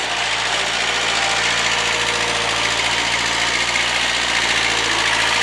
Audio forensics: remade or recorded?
recorded